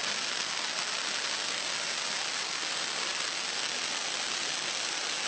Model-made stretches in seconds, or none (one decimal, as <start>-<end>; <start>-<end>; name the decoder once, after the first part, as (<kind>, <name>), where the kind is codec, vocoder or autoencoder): none